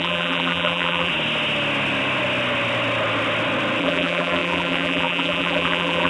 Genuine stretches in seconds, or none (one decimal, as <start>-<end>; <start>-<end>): 1.1-3.8

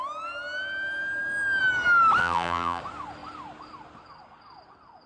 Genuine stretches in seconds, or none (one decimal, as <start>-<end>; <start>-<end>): 0.0-2.2; 2.8-5.1